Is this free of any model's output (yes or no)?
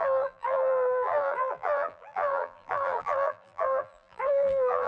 no